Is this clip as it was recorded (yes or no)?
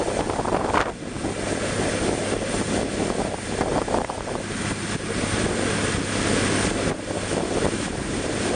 yes